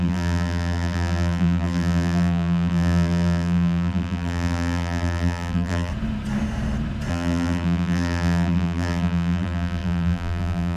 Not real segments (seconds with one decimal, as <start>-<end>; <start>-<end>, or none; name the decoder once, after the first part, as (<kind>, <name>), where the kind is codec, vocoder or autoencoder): 0.0-5.9 (vocoder, BigVGAN v2); 7.1-10.8